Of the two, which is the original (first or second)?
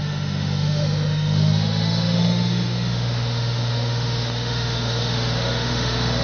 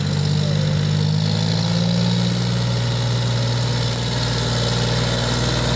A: second